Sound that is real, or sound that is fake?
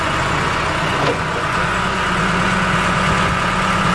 fake